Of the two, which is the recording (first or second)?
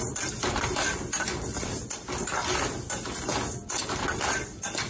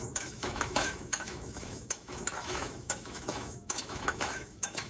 first